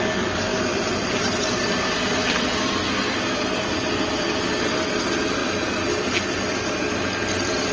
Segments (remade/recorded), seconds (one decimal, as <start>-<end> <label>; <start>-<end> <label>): 0.0-7.7 recorded

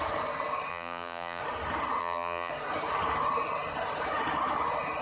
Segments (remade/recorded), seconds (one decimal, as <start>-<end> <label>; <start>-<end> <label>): 0.0-0.7 recorded; 0.7-1.4 remade; 1.4-2.0 recorded; 2.0-2.5 remade; 2.5-5.0 recorded

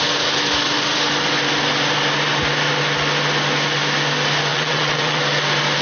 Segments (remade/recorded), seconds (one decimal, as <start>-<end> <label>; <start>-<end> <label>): 0.0-4.5 recorded; 4.5-5.2 remade; 5.2-5.8 recorded

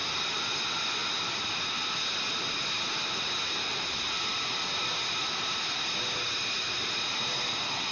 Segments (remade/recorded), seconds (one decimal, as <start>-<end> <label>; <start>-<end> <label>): 0.0-7.9 recorded